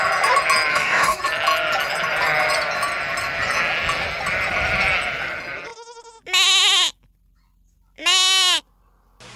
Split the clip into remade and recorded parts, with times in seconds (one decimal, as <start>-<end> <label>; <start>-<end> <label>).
0.0-0.7 recorded; 0.7-1.2 remade; 1.2-9.4 recorded

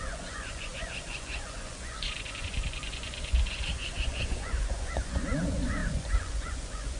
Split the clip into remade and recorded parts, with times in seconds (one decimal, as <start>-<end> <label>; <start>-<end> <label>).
0.0-7.0 remade